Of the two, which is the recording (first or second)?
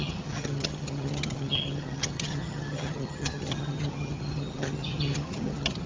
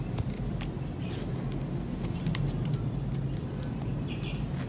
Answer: second